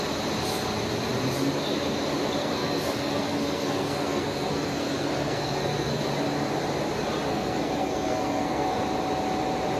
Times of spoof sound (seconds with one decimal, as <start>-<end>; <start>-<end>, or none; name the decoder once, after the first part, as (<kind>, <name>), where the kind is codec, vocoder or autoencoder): 2.4-6.0 (codec, SNAC); 7.3-8.8